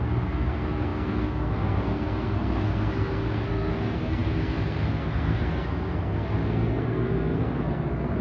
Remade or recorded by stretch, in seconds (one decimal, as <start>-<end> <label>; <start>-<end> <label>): 0.0-8.2 remade